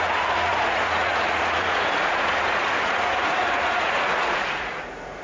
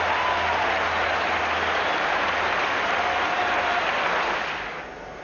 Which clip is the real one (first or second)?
second